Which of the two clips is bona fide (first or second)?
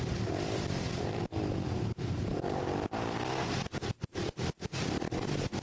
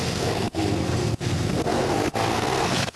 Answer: first